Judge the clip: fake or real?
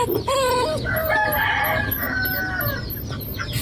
real